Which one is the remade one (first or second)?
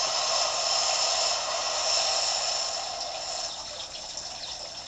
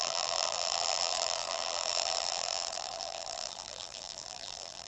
second